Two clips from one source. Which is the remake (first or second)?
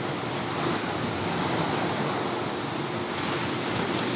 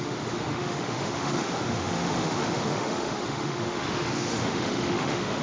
second